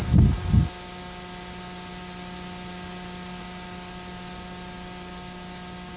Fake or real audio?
real